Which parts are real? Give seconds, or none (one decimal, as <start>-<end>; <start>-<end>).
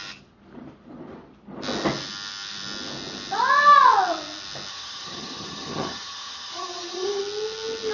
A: 0.0-4.7; 7.2-7.9